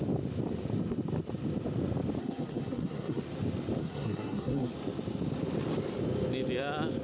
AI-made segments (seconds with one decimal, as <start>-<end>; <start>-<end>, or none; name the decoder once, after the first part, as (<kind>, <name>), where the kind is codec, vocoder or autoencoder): 2.2-3.2 (codec, SNAC); 3.8-4.7